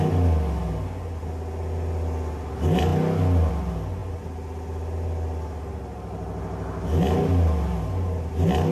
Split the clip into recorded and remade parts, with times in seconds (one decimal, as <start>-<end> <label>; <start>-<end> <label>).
0.0-8.7 recorded